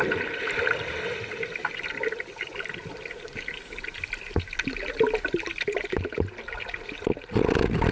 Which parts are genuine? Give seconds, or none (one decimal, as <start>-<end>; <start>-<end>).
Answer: 0.0-7.9